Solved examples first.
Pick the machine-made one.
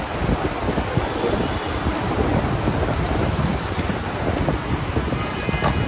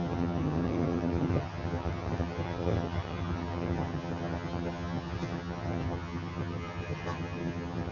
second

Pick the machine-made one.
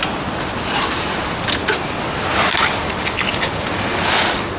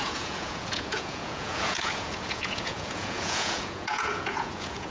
second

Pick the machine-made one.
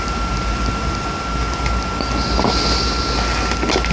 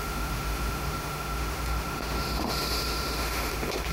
second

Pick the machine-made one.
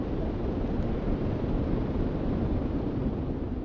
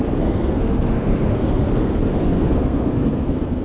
second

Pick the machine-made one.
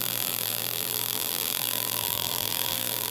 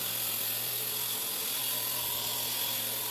first